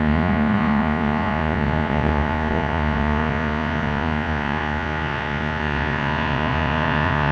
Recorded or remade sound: remade